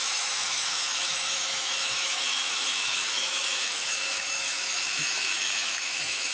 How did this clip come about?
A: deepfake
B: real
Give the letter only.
A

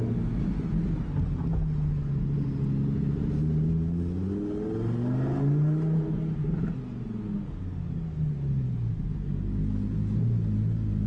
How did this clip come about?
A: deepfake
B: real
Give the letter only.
B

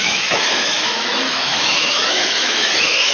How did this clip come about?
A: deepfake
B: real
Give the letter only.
A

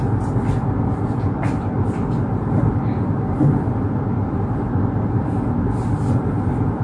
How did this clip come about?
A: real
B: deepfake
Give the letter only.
B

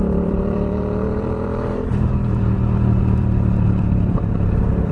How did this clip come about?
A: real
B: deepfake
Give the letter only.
B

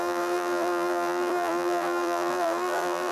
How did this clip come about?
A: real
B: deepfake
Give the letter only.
B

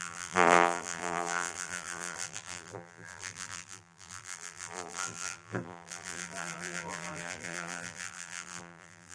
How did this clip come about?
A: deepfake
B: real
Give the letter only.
A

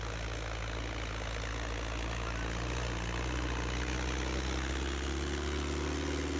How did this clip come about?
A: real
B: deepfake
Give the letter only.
A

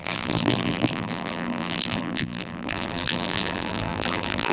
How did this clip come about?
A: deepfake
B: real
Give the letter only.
A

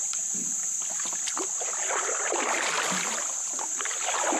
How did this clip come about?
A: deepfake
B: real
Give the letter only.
B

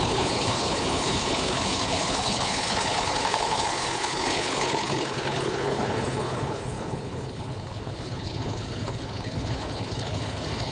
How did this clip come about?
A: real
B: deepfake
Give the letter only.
B